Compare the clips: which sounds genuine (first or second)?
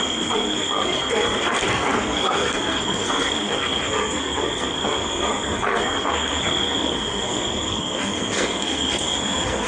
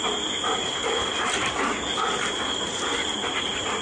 second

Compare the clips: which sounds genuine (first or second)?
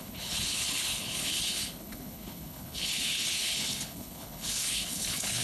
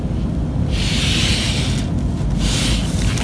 second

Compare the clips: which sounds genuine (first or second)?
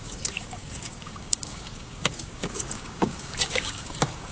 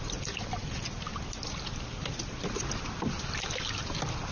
second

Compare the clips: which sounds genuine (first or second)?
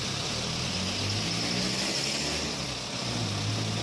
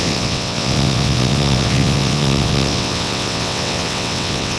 first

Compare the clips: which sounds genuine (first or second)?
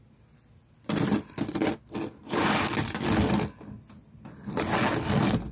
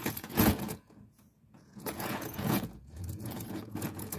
first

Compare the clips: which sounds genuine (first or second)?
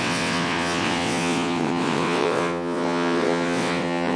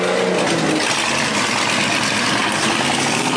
second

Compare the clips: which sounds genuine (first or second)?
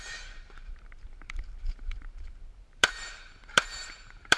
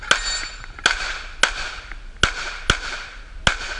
second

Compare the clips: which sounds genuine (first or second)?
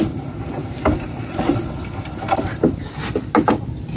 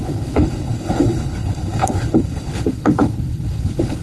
first